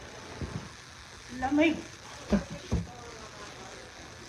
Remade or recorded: recorded